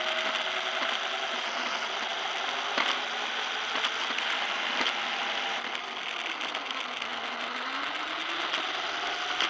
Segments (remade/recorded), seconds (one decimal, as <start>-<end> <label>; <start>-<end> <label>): 0.0-9.5 recorded